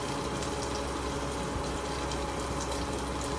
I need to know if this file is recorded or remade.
recorded